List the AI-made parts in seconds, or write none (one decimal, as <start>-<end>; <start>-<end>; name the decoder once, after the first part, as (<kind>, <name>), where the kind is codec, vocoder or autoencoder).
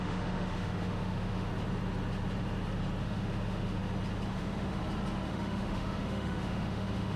0.0-1.5 (autoencoder, DAC-VAE); 3.0-3.8; 4.3-4.8; 5.3-7.2